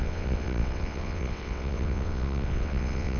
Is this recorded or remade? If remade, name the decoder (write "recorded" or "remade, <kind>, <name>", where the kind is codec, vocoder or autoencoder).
remade, vocoder, WaveNeXt